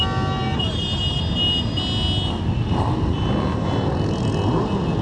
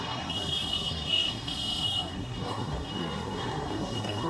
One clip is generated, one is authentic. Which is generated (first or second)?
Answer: second